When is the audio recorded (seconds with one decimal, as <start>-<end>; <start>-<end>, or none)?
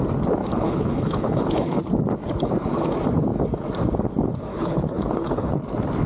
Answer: 0.0-0.4; 1.8-4.5; 5.6-6.1